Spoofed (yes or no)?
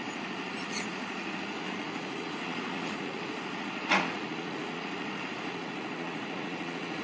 yes